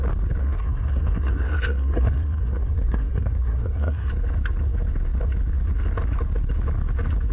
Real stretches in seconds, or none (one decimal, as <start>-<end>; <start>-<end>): 0.0-0.4; 4.1-7.3